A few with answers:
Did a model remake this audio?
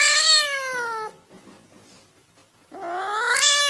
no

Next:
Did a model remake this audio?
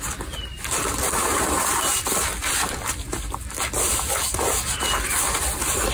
no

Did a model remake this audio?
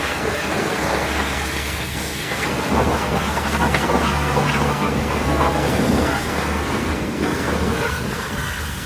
yes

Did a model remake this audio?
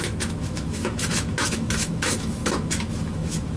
yes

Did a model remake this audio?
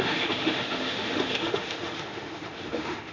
yes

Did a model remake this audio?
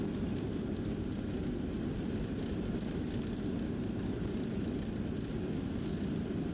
no